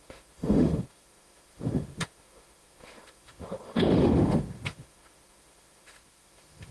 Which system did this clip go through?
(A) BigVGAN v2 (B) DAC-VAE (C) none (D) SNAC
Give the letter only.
B